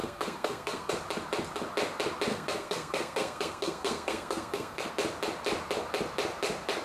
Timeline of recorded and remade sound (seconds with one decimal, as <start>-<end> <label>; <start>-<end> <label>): 0.0-0.9 remade; 0.9-2.3 recorded; 2.3-4.9 remade; 4.9-6.8 recorded